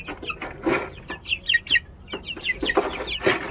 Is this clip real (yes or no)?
yes